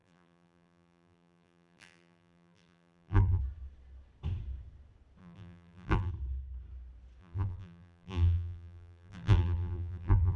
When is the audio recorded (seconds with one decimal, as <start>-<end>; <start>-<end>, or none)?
3.4-5.2; 6.1-7.2